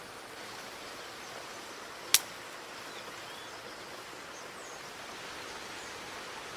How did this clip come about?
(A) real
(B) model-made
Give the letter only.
A